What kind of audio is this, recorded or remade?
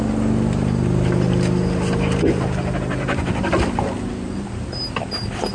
recorded